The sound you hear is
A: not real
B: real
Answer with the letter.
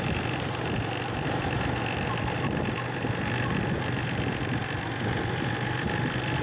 A